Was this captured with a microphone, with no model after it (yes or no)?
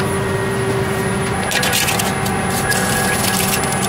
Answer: yes